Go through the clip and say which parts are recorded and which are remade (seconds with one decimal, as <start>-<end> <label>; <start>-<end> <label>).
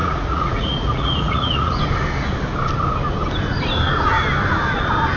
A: 0.0-1.8 remade; 1.8-5.2 recorded